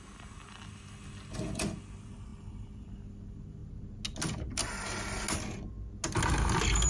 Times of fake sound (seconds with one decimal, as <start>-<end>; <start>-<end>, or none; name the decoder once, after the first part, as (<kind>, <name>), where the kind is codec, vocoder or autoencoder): none